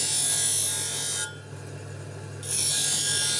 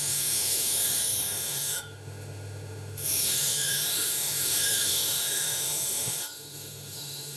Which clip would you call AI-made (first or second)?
second